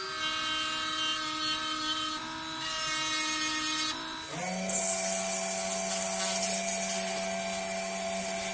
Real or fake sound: real